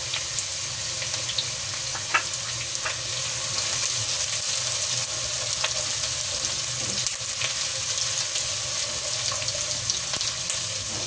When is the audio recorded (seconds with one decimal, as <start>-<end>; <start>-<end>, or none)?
0.0-11.1